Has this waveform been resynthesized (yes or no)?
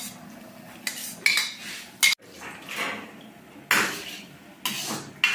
no